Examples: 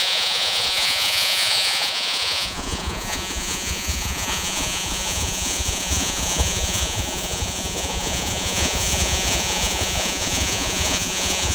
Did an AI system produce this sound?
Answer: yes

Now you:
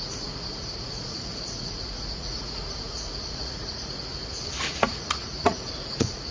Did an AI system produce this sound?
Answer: yes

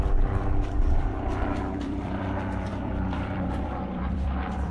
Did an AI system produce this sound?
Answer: yes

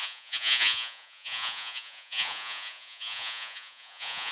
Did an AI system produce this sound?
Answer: yes